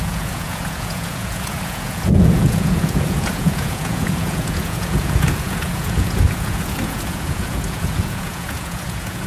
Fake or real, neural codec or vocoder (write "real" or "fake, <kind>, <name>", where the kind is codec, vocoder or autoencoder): fake, vocoder, Vocos